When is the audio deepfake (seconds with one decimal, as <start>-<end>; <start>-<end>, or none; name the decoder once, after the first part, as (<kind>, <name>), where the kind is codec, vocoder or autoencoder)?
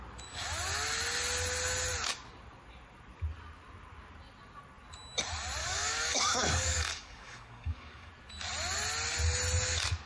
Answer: 5.6-8.1 (codec, DAC)